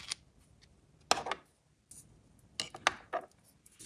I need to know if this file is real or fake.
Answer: real